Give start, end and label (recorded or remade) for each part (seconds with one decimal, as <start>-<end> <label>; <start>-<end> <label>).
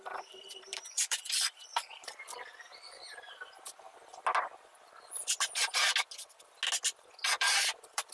0.0-4.1 remade; 4.1-7.3 recorded; 7.3-8.1 remade